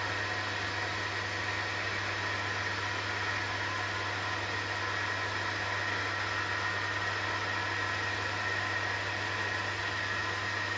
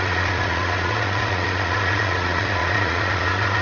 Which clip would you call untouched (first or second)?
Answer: first